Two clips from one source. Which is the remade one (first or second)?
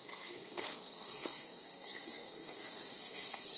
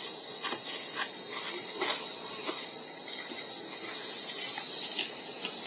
first